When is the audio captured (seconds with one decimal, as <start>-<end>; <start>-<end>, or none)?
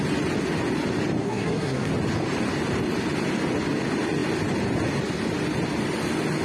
0.0-1.2; 1.9-6.4